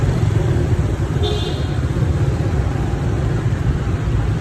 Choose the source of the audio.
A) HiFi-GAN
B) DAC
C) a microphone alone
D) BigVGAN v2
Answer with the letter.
D